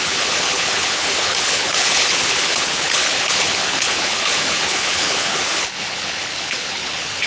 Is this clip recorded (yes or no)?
no